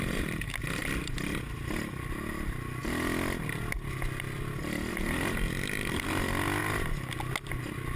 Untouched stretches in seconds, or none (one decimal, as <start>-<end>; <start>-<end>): 0.0-8.0